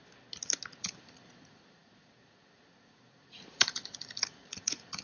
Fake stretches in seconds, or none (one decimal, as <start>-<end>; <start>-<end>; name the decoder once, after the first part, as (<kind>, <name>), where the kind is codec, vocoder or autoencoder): 0.8-5.0 (vocoder, Vocos)